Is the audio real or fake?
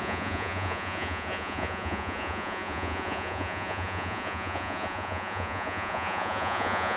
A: fake